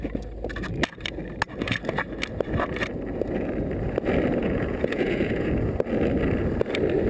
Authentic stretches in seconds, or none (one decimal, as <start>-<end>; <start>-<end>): 0.0-4.4; 5.7-7.1